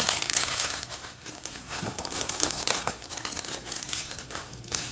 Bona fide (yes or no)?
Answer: no